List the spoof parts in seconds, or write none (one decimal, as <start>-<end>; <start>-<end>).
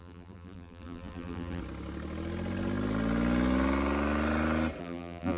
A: 0.0-1.6; 4.8-5.4